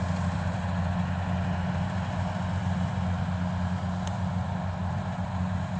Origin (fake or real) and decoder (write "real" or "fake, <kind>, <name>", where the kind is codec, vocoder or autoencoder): real